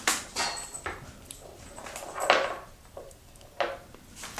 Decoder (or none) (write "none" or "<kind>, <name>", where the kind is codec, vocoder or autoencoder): none